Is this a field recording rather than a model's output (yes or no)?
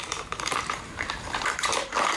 no